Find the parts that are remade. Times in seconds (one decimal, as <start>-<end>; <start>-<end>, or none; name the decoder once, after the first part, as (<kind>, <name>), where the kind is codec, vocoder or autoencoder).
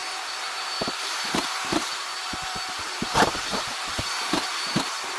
0.0-2.1 (vocoder, BigVGAN v2); 4.5-5.2